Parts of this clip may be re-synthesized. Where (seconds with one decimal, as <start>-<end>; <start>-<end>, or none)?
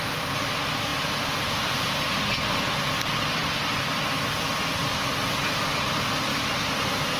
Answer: none